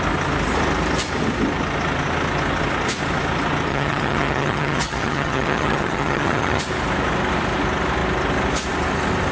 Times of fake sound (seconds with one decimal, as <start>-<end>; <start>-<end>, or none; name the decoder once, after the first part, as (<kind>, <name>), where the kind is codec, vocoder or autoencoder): 3.7-6.6 (vocoder, HiFi-GAN)